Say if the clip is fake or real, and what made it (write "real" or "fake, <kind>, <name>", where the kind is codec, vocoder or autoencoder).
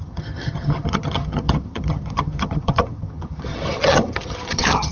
fake, vocoder, HiFi-GAN